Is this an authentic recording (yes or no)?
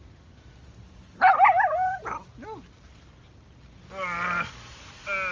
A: yes